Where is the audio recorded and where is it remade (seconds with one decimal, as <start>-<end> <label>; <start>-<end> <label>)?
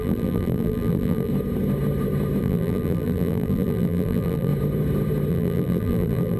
0.0-1.3 remade; 1.3-2.4 recorded; 2.4-4.5 remade; 4.5-5.3 recorded; 5.3-6.4 remade